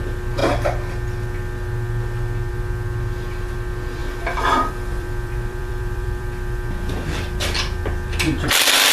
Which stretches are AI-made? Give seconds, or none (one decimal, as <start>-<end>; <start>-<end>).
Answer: 4.0-8.9